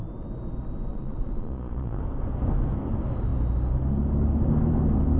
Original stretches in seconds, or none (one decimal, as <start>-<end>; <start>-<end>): 0.0-0.9; 2.0-5.2